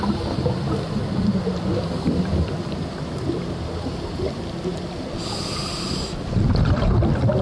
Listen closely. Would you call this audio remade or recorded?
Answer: recorded